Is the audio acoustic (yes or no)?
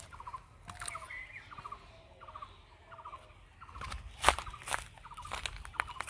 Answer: yes